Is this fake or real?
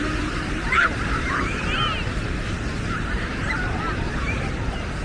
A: fake